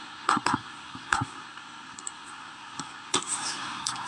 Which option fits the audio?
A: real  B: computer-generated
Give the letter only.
B